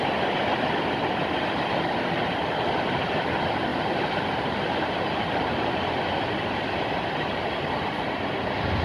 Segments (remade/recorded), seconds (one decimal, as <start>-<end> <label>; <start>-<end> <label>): 0.0-3.7 recorded; 3.7-5.0 remade; 5.0-8.8 recorded

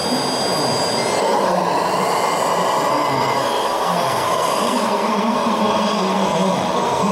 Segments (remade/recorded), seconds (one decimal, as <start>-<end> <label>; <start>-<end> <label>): 0.0-1.2 recorded; 1.2-1.6 remade; 1.6-2.9 recorded; 2.9-7.1 remade

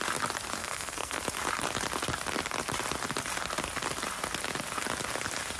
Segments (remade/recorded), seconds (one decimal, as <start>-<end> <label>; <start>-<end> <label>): 0.0-0.6 recorded; 0.6-1.2 remade; 1.2-5.6 recorded